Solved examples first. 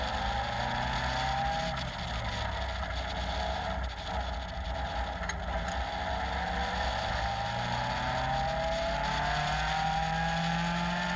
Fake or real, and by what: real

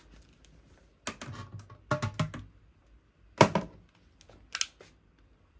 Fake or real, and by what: real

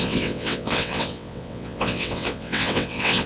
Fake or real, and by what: fake, vocoder, WaveNeXt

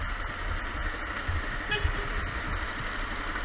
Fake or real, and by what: real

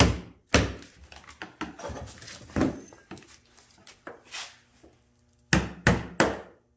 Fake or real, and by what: real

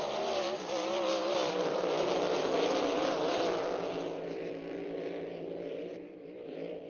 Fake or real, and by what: fake, vocoder, BigVGAN v2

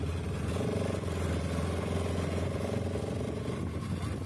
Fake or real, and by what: real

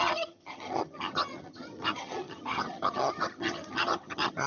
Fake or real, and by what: fake, vocoder, HiFi-GAN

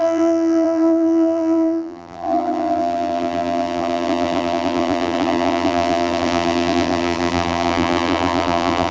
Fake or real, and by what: fake, vocoder, BigVGAN v2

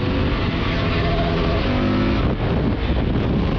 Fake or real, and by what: real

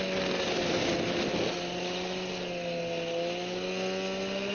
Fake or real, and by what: real